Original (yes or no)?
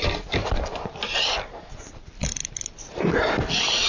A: yes